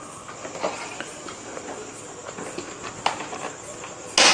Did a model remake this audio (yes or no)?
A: no